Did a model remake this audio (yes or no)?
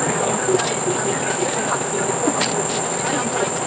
no